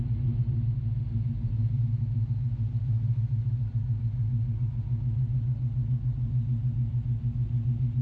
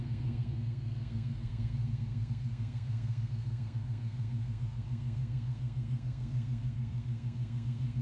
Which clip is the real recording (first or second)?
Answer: first